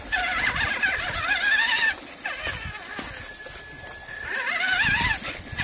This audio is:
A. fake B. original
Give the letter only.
B